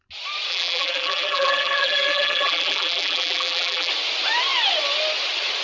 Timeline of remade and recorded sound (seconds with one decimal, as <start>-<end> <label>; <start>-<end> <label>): 0.0-0.5 recorded; 0.5-3.9 remade; 3.9-5.6 recorded